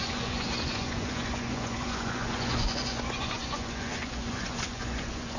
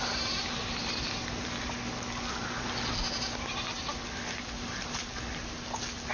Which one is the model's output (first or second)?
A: first